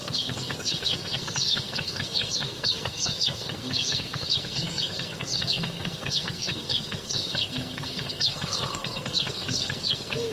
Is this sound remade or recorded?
remade